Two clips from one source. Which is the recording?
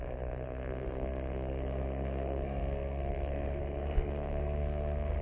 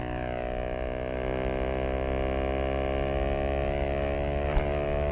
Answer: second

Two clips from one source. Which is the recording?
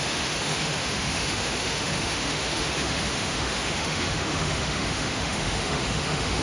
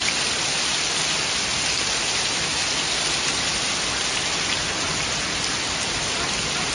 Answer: second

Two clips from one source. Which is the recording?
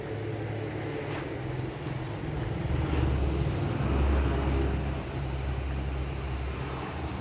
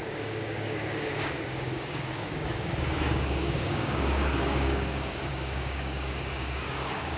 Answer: first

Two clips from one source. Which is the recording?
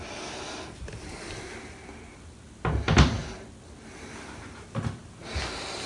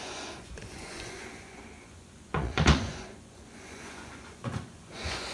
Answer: first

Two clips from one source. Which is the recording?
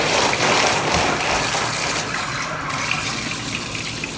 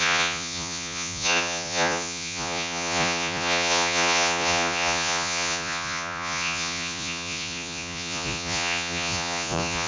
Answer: first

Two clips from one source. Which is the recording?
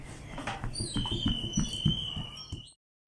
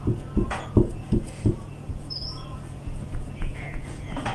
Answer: first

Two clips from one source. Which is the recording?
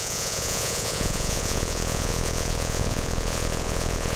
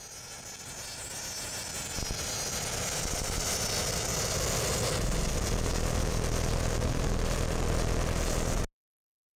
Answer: second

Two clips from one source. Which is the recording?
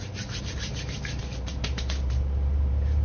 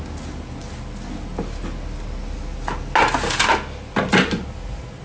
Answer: second